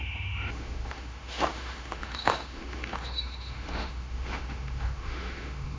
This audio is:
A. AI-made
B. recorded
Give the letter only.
A